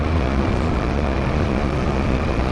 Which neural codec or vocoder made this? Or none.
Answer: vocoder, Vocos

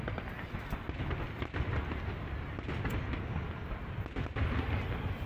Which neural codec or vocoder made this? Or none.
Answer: none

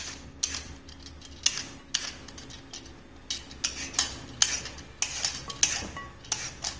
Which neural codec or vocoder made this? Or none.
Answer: none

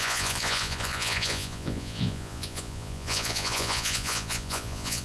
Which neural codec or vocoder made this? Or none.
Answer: vocoder, Vocos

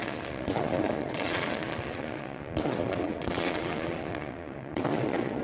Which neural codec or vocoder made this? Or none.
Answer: vocoder, Vocos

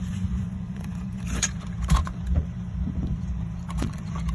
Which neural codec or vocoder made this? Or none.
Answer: vocoder, Vocos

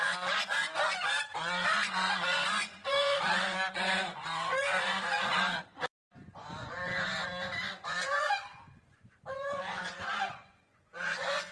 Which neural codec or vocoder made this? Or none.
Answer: vocoder, Vocos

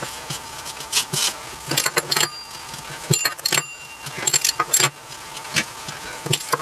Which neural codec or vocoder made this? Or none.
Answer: none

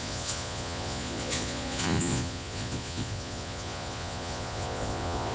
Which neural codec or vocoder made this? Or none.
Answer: vocoder, Vocos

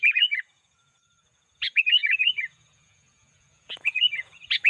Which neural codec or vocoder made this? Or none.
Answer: vocoder, Vocos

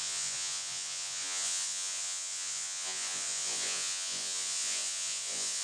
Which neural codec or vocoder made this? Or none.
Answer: vocoder, Vocos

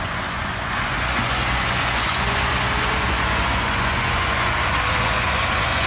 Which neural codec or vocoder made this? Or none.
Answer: vocoder, Vocos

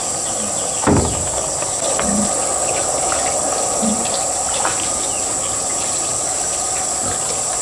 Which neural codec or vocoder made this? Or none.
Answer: none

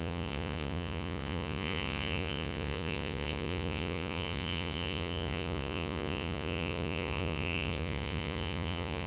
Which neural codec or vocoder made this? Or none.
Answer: vocoder, Vocos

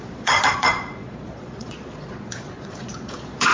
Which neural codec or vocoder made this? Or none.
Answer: vocoder, Vocos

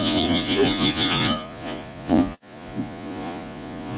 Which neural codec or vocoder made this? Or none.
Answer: vocoder, Vocos